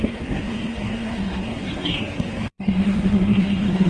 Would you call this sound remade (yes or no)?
yes